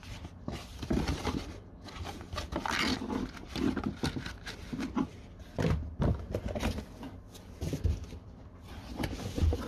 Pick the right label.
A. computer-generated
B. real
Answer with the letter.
A